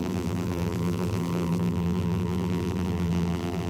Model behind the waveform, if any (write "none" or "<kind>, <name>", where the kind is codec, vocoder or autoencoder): vocoder, BigVGAN v2